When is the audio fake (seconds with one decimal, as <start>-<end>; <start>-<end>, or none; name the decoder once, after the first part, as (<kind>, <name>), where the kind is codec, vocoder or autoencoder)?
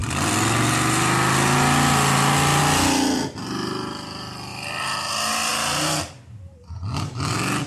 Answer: none